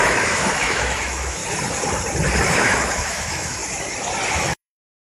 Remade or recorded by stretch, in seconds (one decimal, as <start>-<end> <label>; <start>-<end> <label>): 0.0-1.4 remade; 1.4-2.5 recorded; 2.5-3.6 remade; 3.6-4.3 recorded; 4.3-5.0 remade